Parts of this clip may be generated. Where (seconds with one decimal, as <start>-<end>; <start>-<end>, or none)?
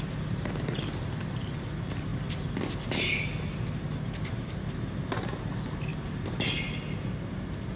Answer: none